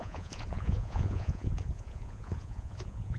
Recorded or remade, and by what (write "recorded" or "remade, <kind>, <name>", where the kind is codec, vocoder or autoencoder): remade, vocoder, Vocos